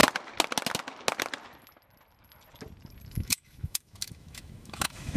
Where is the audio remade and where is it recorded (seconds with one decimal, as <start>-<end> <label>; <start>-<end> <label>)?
0.0-3.1 recorded; 3.1-5.2 remade